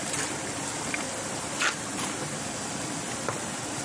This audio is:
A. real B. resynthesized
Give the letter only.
A